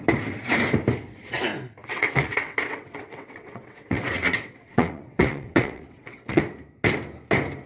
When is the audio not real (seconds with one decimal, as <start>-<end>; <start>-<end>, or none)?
1.8-6.4